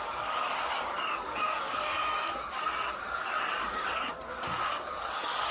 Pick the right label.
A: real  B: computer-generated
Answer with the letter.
B